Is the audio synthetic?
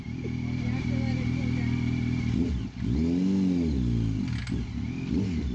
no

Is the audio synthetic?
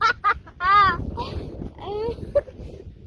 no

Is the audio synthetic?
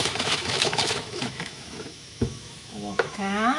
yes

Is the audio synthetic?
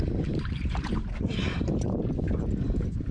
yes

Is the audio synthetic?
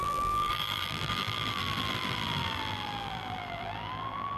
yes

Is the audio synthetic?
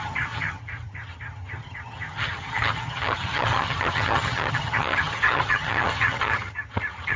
yes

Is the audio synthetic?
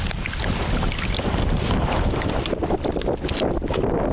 no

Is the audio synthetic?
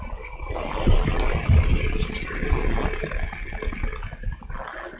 no